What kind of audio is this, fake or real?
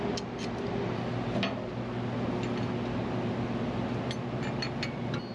real